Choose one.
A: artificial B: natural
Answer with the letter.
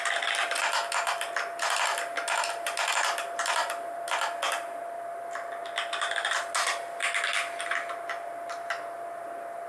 B